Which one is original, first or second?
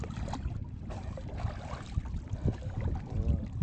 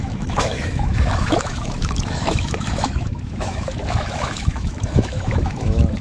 first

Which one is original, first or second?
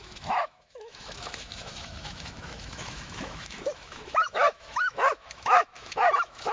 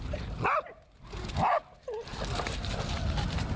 second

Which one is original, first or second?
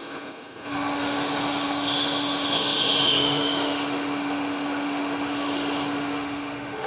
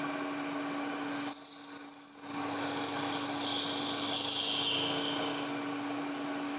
second